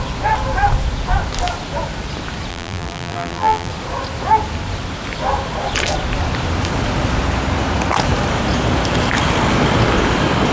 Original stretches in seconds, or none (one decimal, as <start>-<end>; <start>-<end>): 0.0-2.5; 3.7-10.5